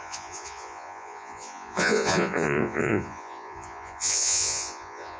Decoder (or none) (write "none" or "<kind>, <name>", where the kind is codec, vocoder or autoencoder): vocoder, Vocos